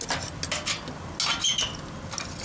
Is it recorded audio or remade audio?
recorded